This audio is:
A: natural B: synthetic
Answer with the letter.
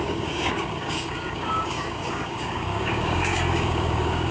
B